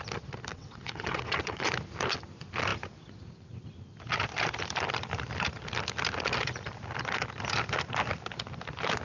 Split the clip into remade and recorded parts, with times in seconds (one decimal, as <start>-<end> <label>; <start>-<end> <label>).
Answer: 0.0-0.5 recorded; 0.5-1.7 remade; 1.7-9.0 recorded